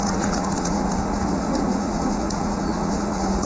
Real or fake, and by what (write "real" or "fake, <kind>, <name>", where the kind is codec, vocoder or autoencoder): fake, vocoder, Vocos